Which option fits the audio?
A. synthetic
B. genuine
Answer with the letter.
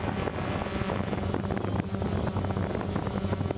B